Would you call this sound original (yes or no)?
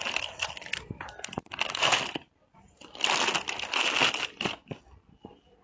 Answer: yes